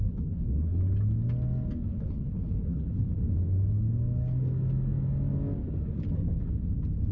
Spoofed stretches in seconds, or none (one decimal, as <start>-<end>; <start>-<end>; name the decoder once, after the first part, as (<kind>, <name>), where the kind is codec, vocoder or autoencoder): 0.0-0.8 (codec, HILCodec); 1.9-3.2